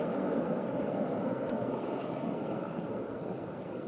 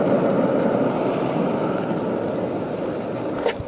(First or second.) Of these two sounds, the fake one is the first